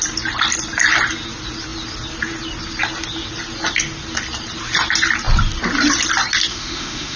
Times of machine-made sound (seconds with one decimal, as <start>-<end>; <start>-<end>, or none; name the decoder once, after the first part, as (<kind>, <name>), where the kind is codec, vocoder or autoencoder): 6.5-7.2 (autoencoder, DAC-VAE)